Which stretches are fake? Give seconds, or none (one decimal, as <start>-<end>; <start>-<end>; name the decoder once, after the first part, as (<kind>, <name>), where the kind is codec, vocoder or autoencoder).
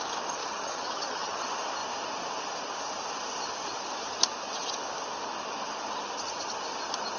0.4-1.4 (vocoder, HiFi-GAN)